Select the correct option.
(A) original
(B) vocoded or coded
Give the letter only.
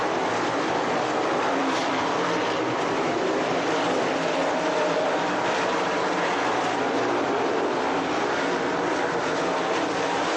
B